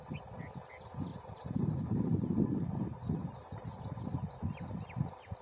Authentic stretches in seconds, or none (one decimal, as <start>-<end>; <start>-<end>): 0.0-1.1; 4.3-5.4